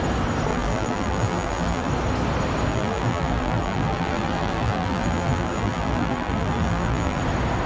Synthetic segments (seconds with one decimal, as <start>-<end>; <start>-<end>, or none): 0.5-1.9; 2.7-7.2